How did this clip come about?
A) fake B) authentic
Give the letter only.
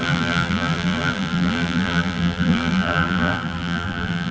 A